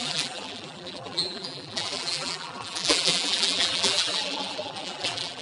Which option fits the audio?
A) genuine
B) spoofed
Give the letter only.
B